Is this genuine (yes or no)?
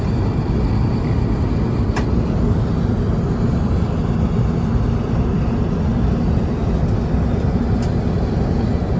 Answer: yes